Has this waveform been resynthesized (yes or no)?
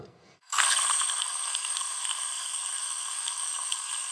yes